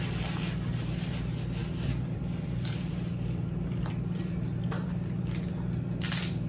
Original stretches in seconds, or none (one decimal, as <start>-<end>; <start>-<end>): 0.0-1.6; 5.5-6.5